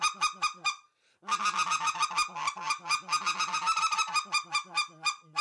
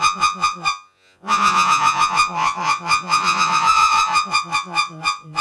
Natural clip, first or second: first